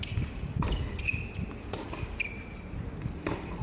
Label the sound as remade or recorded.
recorded